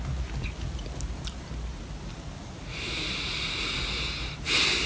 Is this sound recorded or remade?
recorded